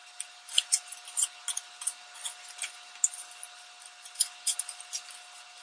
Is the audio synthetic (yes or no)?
no